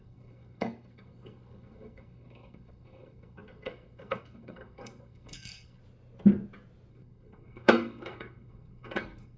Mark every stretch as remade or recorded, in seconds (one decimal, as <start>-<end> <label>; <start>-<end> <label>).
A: 0.0-5.8 remade; 5.8-6.9 recorded; 6.9-9.4 remade